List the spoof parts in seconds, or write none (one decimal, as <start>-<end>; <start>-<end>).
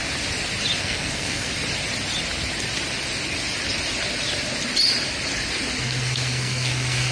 0.8-1.5; 5.8-7.1